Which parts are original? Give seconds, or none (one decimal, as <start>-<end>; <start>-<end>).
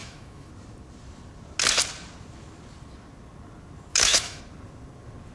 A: 0.5-3.9; 4.4-5.3